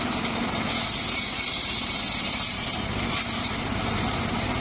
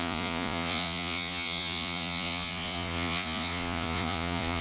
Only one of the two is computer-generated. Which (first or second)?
second